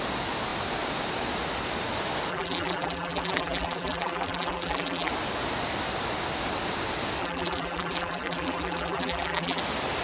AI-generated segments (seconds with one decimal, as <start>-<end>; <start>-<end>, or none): 2.3-5.1; 7.2-9.6